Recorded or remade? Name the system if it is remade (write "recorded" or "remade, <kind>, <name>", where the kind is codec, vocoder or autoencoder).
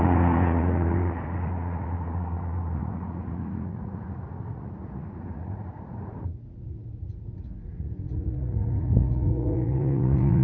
remade, vocoder, Vocos